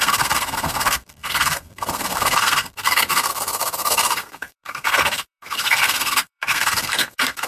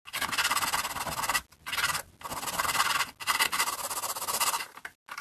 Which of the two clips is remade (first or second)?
first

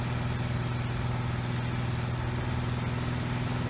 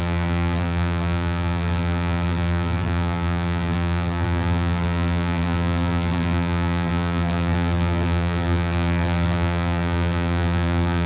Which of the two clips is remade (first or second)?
second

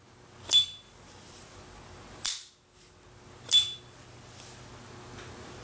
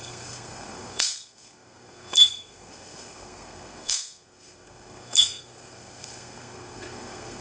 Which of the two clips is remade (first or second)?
second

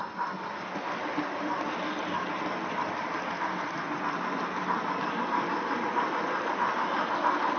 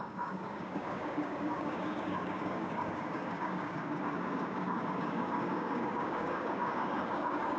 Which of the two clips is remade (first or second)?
second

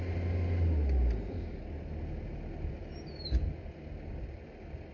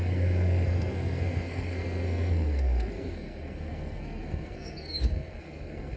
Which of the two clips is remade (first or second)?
second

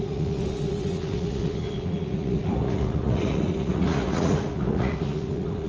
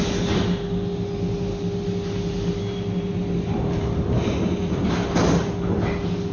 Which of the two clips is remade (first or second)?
first